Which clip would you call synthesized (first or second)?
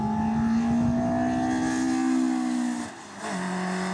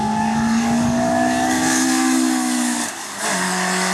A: second